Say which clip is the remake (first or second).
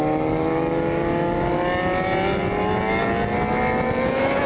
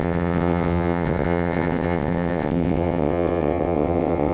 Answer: second